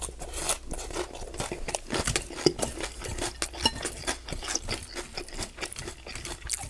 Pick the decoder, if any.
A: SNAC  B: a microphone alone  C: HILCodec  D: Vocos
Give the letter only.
B